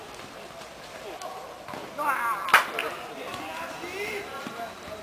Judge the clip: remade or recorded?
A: recorded